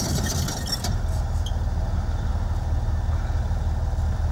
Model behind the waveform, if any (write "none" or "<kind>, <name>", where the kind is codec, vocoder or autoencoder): none